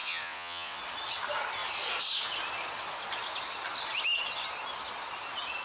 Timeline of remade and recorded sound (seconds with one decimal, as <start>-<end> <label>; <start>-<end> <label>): 0.0-0.8 remade; 0.8-5.6 recorded

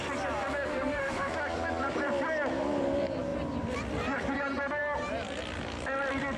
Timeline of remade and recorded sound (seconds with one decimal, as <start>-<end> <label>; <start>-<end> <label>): 0.0-0.7 recorded; 0.7-1.3 remade; 1.3-6.4 recorded

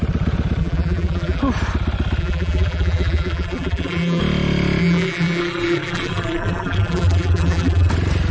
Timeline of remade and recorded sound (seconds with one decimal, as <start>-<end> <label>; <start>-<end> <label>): 0.0-0.6 recorded; 0.6-1.4 remade; 1.4-2.2 recorded; 2.2-4.2 remade; 4.2-4.8 recorded; 4.8-7.9 remade; 7.9-8.3 recorded